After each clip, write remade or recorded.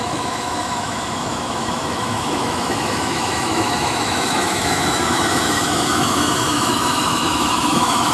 remade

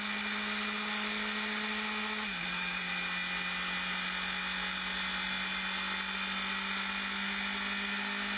recorded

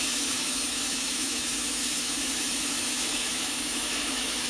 remade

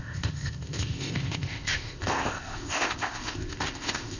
remade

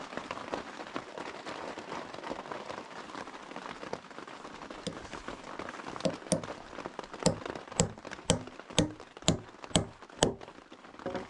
recorded